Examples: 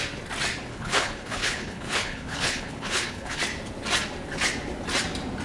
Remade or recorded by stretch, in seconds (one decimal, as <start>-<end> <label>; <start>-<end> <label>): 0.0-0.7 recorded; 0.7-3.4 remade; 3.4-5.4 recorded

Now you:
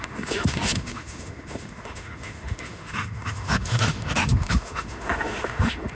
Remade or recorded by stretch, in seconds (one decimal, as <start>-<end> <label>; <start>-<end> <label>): 0.0-5.9 remade

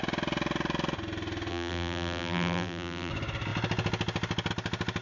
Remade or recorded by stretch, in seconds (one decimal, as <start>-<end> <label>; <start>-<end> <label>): 0.0-1.5 recorded; 1.5-3.1 remade; 3.1-5.0 recorded